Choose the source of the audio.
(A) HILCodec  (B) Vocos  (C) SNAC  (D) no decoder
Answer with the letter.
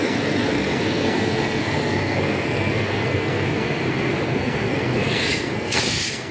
C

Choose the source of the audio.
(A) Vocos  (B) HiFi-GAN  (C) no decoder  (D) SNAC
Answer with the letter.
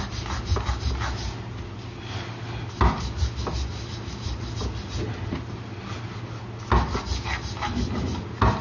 C